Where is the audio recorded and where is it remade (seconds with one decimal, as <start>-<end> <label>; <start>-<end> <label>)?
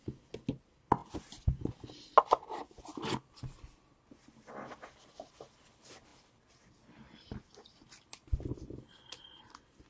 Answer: 0.0-9.9 recorded